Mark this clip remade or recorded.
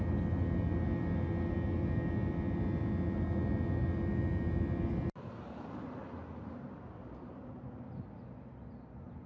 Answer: recorded